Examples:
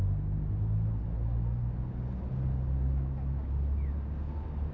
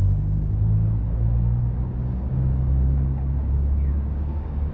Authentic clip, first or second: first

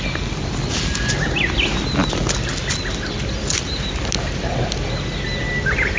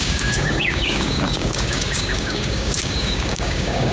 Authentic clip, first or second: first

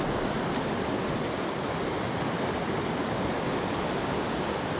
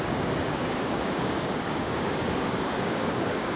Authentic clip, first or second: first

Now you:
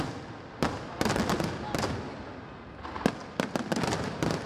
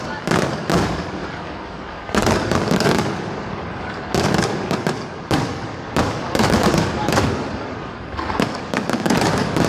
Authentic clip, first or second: first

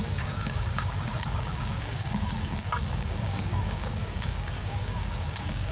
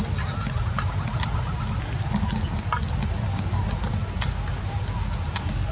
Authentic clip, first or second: second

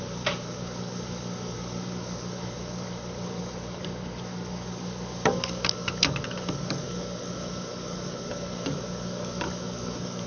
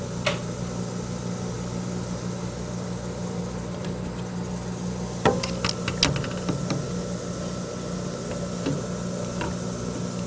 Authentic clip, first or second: second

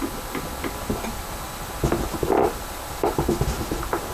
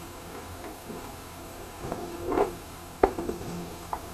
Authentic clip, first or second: first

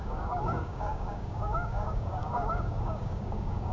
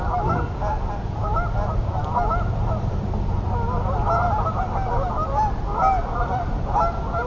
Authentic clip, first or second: second